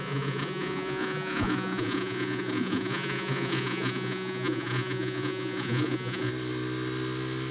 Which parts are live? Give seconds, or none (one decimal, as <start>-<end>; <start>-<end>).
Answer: 6.3-7.5